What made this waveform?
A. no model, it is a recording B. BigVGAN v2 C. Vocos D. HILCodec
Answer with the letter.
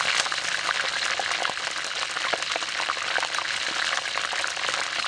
A